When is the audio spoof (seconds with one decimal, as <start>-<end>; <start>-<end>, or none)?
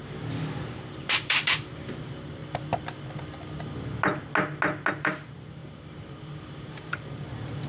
0.0-2.4; 4.9-7.7